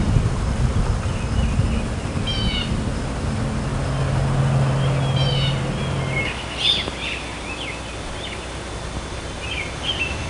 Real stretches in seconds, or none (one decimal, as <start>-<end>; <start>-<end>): 0.0-10.3